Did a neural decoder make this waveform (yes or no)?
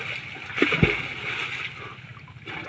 no